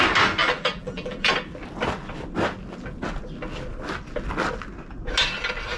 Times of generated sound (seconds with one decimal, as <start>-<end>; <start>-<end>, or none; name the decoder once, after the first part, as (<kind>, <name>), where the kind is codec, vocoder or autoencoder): 0.4-1.3 (vocoder, BigVGAN v2)